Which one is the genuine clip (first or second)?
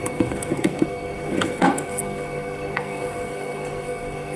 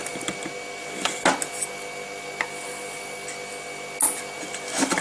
second